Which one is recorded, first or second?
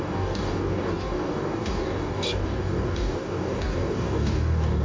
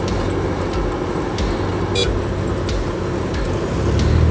second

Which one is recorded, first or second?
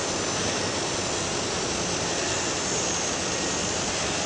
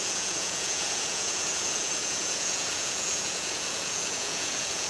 first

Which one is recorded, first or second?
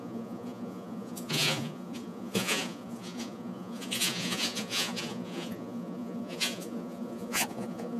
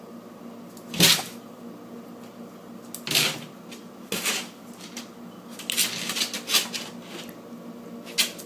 second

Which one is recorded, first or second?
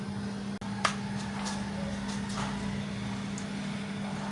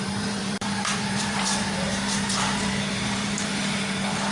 first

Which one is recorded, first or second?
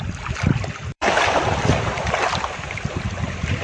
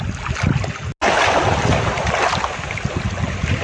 second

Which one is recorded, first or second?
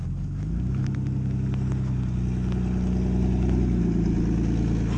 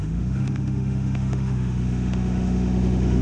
first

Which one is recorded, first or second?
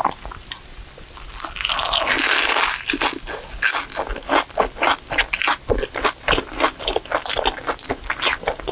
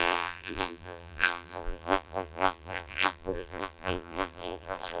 first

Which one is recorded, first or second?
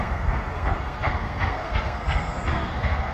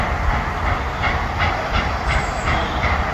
second